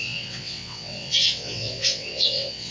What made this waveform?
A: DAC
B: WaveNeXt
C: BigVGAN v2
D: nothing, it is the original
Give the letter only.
B